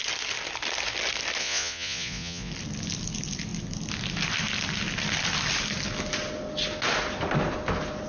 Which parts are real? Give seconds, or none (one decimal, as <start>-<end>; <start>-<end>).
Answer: 0.0-1.4; 2.5-8.1